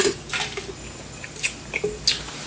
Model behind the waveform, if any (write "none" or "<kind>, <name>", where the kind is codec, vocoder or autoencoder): none